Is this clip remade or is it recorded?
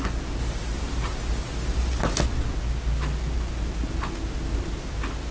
recorded